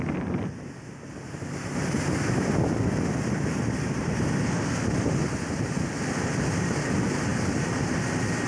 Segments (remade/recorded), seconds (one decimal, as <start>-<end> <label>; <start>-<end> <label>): 0.0-8.5 recorded